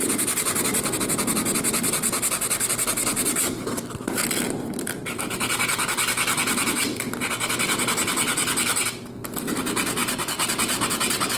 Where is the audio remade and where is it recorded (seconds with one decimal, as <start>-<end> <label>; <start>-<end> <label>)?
0.0-11.4 recorded